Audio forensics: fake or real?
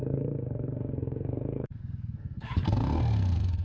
fake